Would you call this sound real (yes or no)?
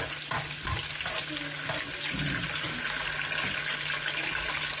yes